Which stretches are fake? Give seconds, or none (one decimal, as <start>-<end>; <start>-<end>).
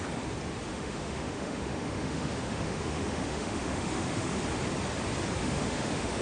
0.7-4.4; 5.4-6.2